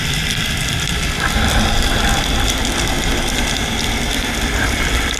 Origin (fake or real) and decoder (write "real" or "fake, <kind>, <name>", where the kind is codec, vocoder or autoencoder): real